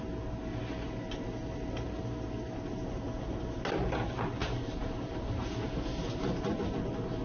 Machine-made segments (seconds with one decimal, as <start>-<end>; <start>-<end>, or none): 4.4-5.5

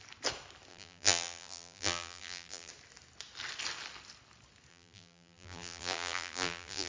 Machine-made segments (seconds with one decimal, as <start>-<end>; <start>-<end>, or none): 0.7-2.7; 4.7-6.9

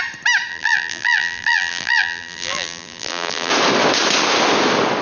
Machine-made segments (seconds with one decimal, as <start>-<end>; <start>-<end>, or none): 0.5-3.5